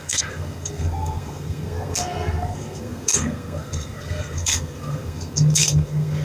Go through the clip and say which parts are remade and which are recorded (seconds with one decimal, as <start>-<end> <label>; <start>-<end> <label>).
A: 0.0-6.2 remade